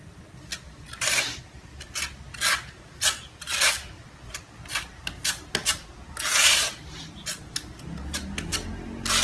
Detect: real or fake real